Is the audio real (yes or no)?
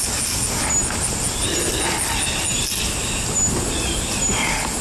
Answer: yes